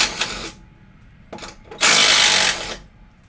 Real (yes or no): yes